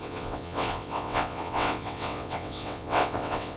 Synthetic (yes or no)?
yes